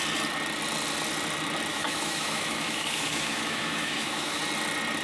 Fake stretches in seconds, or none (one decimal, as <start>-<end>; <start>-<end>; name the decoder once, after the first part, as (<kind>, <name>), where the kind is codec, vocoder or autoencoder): 1.7-4.4 (autoencoder, DAC-VAE)

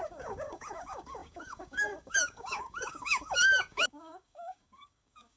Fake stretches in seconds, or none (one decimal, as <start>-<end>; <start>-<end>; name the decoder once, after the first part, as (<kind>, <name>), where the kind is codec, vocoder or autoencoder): 0.0-5.4 (codec, DAC)

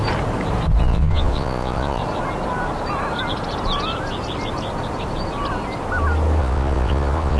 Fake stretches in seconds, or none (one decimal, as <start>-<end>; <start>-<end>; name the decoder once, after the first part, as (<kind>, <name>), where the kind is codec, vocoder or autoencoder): 0.8-2.0 (vocoder, Vocos); 6.4-7.4

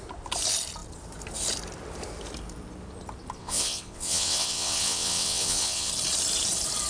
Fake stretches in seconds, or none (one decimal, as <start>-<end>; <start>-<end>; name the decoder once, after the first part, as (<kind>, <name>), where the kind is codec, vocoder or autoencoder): 3.4-5.9 (vocoder, WaveNeXt)

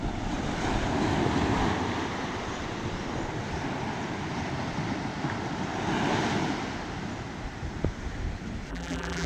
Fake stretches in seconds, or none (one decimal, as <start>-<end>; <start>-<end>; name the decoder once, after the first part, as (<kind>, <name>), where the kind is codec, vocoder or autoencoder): 8.7-9.3 (vocoder, BigVGAN v2)